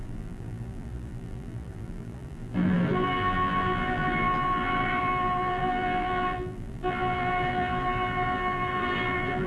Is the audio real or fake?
fake